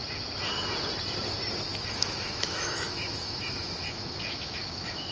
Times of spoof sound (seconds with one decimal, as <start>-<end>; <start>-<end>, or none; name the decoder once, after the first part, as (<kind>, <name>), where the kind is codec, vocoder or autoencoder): 1.7-5.1 (autoencoder, DAC-VAE)